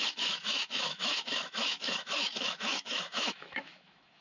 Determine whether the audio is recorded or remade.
remade